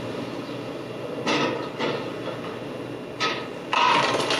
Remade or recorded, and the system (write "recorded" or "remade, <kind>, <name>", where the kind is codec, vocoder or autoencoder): recorded